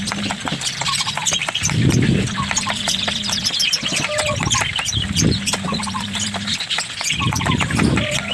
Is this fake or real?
real